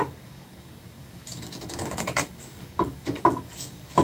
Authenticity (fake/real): fake